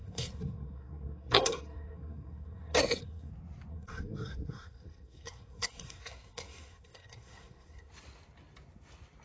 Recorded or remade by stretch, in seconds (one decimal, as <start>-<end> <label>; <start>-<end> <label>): 0.0-3.3 remade; 3.3-3.7 recorded; 3.7-7.9 remade; 7.9-9.2 recorded

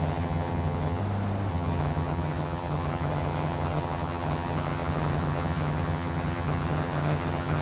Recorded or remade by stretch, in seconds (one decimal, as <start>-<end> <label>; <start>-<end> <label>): 0.0-1.0 remade; 1.0-1.5 recorded; 1.5-7.6 remade

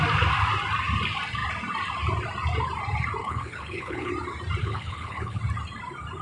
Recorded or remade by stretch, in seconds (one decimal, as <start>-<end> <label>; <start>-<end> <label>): 0.0-3.2 recorded; 3.2-4.1 remade; 4.1-4.6 recorded; 4.6-5.4 remade; 5.4-6.2 recorded

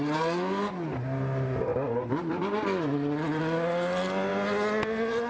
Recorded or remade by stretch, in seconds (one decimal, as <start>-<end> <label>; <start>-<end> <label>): 0.0-5.3 recorded

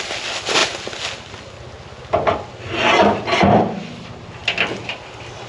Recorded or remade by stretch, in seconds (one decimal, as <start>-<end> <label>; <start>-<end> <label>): 0.0-5.5 recorded

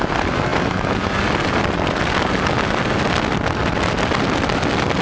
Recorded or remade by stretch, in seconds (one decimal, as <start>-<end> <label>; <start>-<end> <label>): 0.0-5.0 recorded

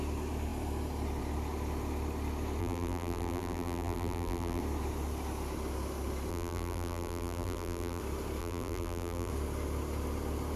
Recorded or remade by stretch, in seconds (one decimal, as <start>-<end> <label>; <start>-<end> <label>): 0.0-2.6 recorded; 2.6-4.6 remade; 4.6-6.3 recorded; 6.3-8.0 remade; 8.0-8.4 recorded; 8.4-9.3 remade; 9.3-10.6 recorded